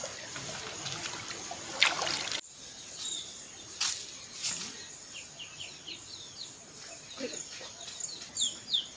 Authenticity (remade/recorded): recorded